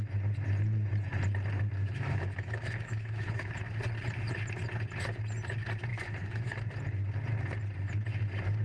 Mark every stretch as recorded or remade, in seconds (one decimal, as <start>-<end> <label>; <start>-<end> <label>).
0.0-1.8 recorded; 1.8-3.5 remade; 3.5-5.9 recorded; 5.9-6.6 remade; 6.6-8.6 recorded